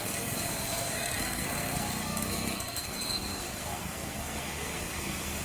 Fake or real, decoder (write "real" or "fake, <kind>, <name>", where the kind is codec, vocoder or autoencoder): fake, codec, SNAC